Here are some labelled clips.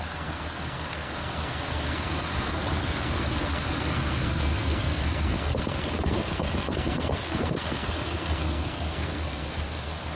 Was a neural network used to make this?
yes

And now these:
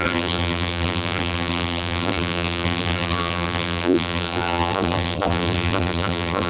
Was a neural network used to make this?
yes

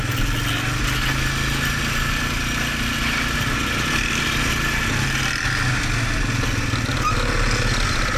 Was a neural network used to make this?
no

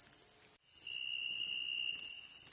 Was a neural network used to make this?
no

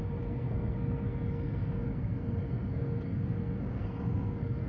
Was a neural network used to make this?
yes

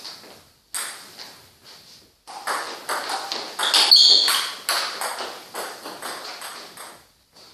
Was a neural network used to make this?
no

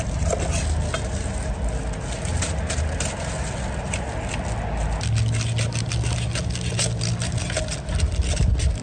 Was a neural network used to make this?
no